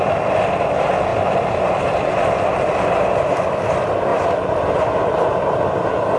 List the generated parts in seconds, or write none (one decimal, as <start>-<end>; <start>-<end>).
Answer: 1.1-2.1; 4.1-5.6